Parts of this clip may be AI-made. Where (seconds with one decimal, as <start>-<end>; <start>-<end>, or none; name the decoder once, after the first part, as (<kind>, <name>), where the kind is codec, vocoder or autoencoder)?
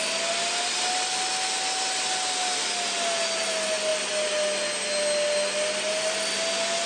none